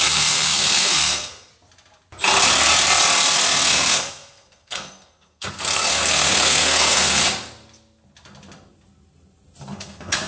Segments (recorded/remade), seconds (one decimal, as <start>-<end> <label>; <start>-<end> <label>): 0.0-1.5 remade; 1.5-3.7 recorded; 3.7-7.2 remade; 7.2-9.6 recorded; 9.6-10.3 remade